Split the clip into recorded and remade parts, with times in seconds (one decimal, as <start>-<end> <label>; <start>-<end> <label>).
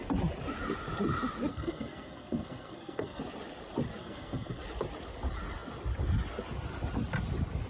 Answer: 0.0-1.5 recorded; 1.5-3.2 remade; 3.2-4.0 recorded; 4.0-4.6 remade; 4.6-7.7 recorded